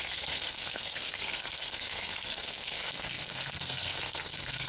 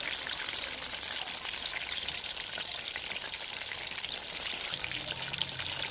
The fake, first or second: first